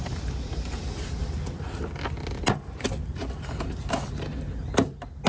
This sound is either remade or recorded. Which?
recorded